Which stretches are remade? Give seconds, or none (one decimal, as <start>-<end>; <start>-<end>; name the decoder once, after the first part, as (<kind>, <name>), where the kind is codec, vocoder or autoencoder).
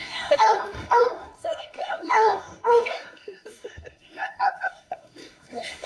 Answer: 0.0-5.9 (codec, SNAC)